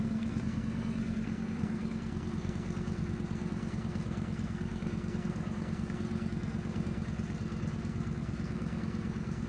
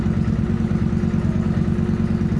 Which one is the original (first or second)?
second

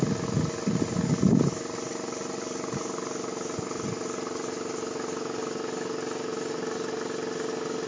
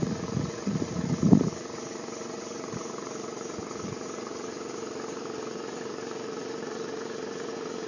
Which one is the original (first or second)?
first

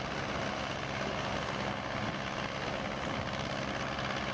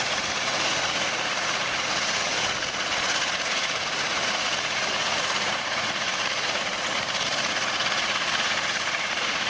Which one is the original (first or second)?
first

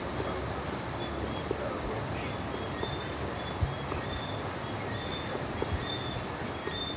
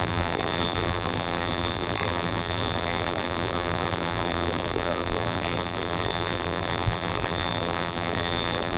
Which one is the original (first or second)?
first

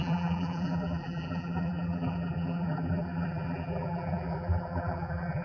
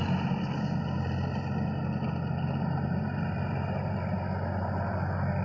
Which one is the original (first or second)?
second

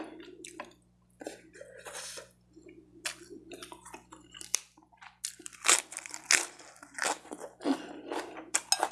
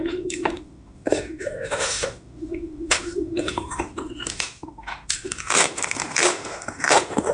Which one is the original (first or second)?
first